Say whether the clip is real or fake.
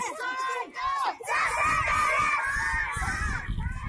real